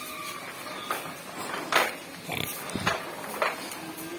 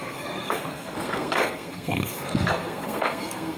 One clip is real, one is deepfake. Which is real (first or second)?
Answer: first